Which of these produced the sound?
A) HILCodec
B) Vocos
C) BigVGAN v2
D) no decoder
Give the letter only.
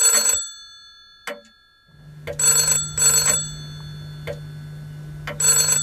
D